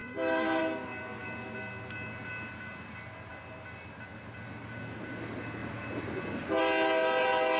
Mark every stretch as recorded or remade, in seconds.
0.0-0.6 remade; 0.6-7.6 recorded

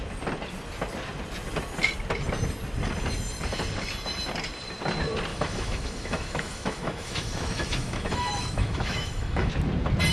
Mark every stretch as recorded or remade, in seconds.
0.0-5.3 recorded; 5.3-9.5 remade; 9.5-10.1 recorded

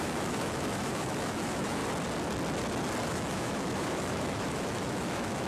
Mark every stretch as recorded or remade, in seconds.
0.0-1.8 remade; 1.8-3.1 recorded; 3.1-5.5 remade

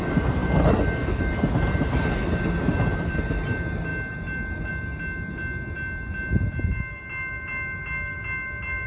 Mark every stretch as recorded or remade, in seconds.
0.0-8.9 recorded

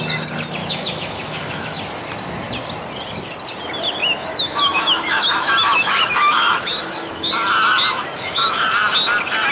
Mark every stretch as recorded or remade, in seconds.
0.0-0.6 recorded; 0.6-1.8 remade; 1.8-4.0 recorded; 4.0-7.3 remade; 7.3-7.9 recorded; 7.9-8.7 remade; 8.7-9.5 recorded

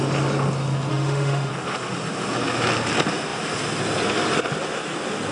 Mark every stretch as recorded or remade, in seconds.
0.0-0.9 recorded; 0.9-1.5 remade; 1.5-5.3 recorded